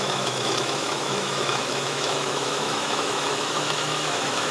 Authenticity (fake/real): fake